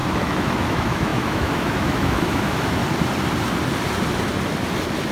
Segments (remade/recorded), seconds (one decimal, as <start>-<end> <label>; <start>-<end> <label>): 0.0-2.8 remade; 2.8-5.1 recorded